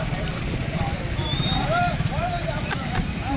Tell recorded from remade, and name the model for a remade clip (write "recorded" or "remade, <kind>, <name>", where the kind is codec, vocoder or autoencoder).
remade, vocoder, BigVGAN v2